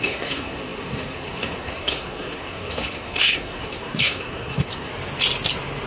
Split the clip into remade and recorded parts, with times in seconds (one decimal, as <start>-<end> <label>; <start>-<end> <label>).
0.0-4.9 remade; 4.9-5.9 recorded